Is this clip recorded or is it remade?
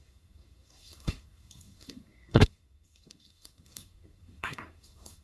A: remade